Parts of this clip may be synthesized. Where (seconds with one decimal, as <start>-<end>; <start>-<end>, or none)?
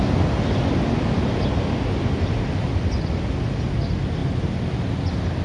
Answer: none